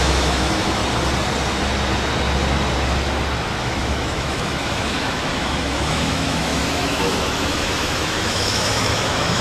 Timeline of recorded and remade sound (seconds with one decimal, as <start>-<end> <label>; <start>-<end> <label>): 0.0-0.8 remade; 0.8-3.5 recorded; 3.5-9.4 remade